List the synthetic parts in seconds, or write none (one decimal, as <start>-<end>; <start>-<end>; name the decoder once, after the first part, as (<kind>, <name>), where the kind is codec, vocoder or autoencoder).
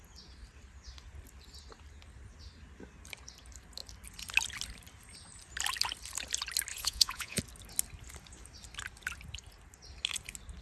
6.7-7.4 (vocoder, Vocos)